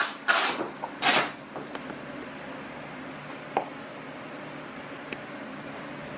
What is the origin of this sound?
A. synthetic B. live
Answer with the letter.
B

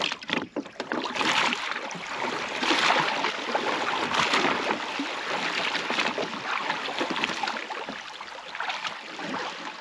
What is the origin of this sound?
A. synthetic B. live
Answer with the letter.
B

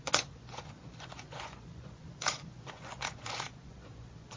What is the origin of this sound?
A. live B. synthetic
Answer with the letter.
B